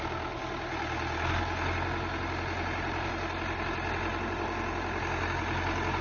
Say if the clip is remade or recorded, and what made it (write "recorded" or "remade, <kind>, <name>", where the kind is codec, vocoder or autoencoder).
recorded